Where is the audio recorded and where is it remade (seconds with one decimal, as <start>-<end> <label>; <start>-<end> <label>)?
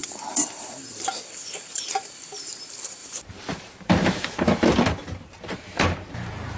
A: 0.0-1.1 remade; 1.1-3.0 recorded; 3.0-4.4 remade; 4.4-5.0 recorded; 5.0-6.6 remade